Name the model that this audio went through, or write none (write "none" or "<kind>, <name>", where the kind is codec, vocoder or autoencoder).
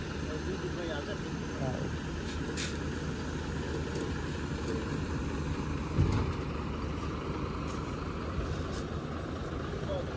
none